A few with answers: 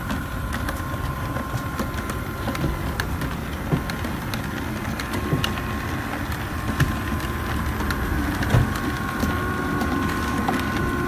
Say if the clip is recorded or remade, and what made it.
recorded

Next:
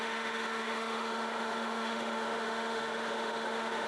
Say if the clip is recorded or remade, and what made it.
remade, autoencoder, DAC-VAE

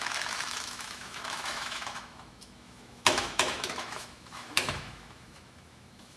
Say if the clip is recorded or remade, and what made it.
remade, autoencoder, DAC-VAE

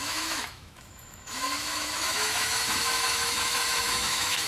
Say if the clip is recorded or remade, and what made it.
remade, autoencoder, DAC-VAE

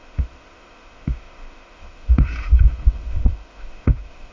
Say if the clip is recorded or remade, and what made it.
remade, autoencoder, DAC-VAE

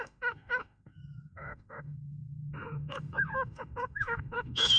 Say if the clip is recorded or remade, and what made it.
remade, autoencoder, DAC-VAE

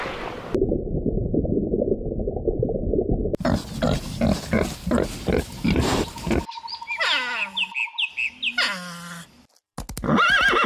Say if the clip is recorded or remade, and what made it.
recorded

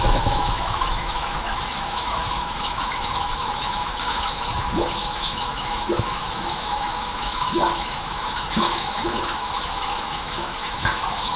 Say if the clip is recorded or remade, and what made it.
remade, autoencoder, DAC-VAE